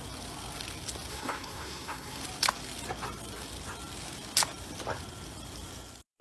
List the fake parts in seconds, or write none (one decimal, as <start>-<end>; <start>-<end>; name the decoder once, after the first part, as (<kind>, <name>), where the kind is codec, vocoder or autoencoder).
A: 1.1-2.2 (codec, SNAC)